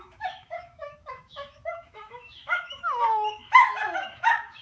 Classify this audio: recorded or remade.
remade